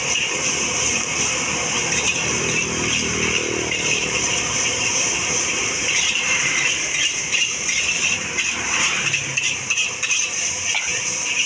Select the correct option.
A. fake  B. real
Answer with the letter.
A